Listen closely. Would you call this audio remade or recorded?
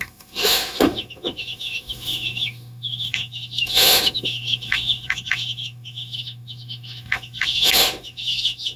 remade